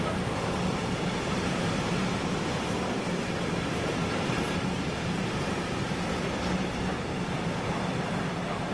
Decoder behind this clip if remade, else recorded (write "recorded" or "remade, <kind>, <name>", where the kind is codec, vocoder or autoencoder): remade, vocoder, BigVGAN v2